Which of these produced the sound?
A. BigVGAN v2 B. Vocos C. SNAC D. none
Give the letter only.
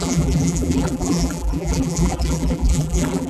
A